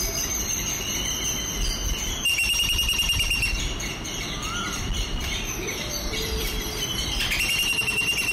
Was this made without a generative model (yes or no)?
no